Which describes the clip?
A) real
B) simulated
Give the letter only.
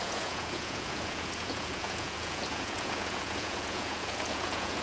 B